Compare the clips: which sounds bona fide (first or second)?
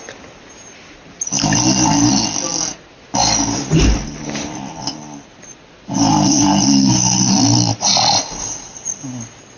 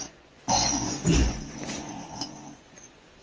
first